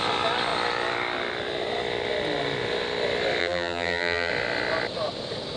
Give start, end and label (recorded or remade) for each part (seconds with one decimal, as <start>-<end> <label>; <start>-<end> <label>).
0.0-3.4 recorded; 3.4-4.3 remade; 4.3-5.6 recorded